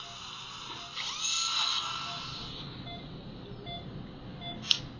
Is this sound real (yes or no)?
yes